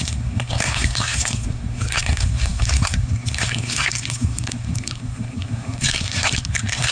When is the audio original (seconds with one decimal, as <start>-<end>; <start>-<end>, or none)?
none